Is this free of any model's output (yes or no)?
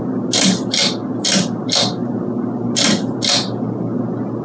yes